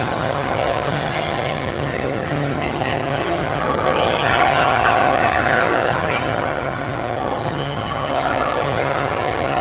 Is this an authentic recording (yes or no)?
no